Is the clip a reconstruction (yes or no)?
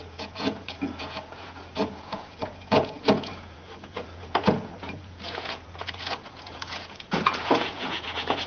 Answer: yes